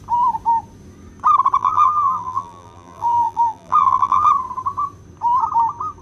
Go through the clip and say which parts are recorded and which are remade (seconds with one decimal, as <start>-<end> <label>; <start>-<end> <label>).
0.0-1.6 recorded; 1.6-4.3 remade; 4.3-6.0 recorded